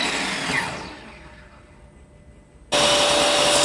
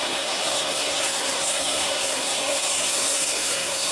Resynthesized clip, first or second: second